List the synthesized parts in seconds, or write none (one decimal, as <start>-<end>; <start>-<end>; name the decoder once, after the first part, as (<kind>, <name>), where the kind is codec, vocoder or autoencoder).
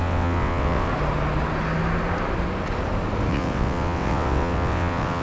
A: 0.0-0.9 (vocoder, WaveNeXt); 3.3-5.2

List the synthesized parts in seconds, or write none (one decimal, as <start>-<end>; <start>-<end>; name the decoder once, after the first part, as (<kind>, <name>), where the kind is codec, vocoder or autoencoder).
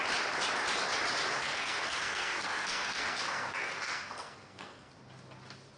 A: 1.4-4.9 (codec, SNAC)